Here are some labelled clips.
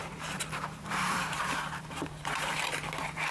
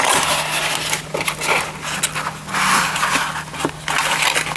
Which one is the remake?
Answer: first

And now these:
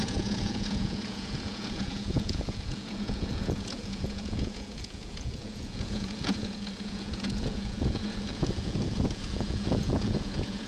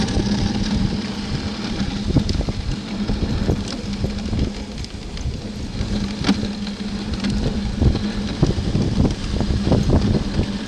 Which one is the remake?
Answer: first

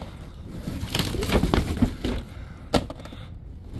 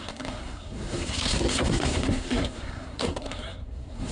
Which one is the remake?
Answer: second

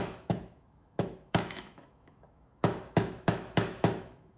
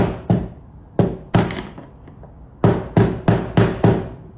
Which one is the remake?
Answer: first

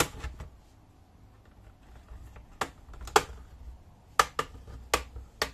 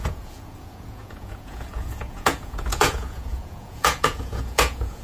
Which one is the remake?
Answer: second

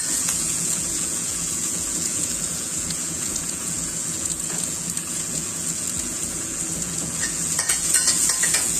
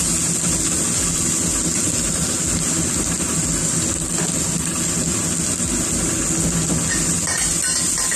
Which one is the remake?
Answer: first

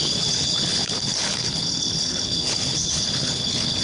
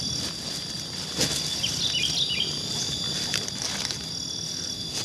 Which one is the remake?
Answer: first